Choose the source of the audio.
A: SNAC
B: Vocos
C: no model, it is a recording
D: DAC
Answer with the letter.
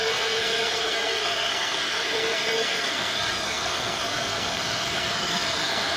A